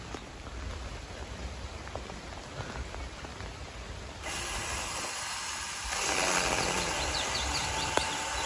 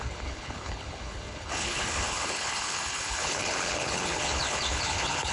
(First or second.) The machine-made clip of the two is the second